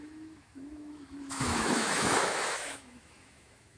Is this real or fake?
fake